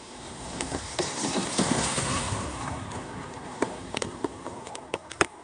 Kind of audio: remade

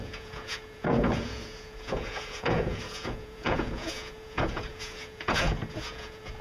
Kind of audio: remade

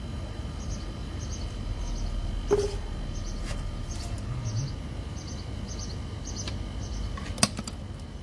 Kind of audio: recorded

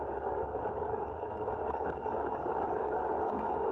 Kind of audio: remade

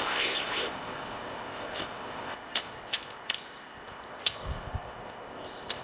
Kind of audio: remade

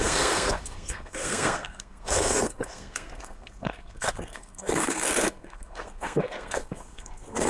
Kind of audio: remade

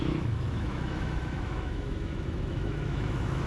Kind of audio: remade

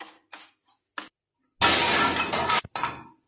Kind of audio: recorded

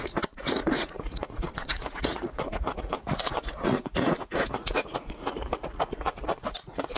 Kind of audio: remade